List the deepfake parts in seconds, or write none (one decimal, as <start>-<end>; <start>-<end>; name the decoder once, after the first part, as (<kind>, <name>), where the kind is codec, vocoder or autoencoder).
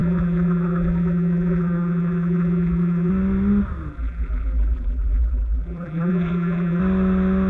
0.0-3.1 (vocoder, BigVGAN v2); 3.9-6.8